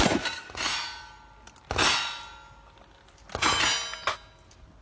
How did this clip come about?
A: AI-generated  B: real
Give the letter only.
B